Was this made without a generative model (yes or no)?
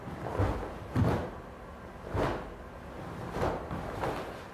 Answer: yes